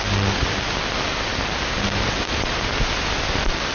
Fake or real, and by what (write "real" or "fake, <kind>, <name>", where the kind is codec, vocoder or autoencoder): real